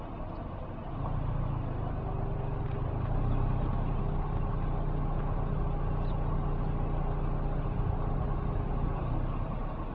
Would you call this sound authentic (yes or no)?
yes